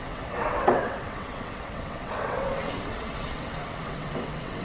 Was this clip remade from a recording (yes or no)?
yes